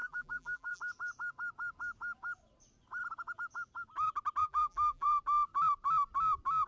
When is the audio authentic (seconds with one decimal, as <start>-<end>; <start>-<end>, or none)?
0.8-4.4; 5.2-6.7